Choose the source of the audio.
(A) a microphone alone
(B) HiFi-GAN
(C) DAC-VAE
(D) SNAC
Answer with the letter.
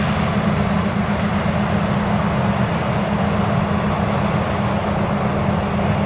A